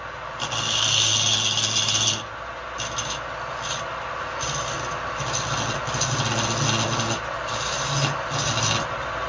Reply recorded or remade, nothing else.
recorded